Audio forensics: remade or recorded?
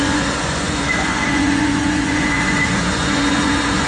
remade